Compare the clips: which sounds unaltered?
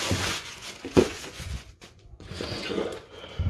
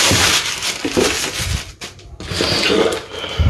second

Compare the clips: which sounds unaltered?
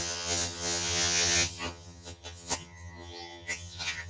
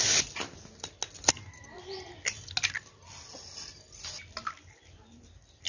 second